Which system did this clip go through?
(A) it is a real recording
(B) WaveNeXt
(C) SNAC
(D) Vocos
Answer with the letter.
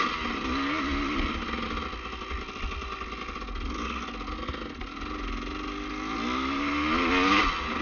A